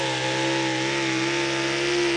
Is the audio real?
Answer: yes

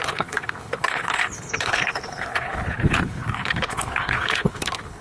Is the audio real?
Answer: no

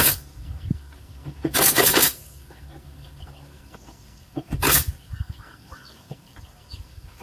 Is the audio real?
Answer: no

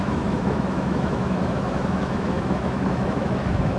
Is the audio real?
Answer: no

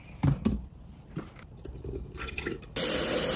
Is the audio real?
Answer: no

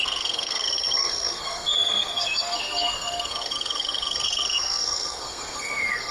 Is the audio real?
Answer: no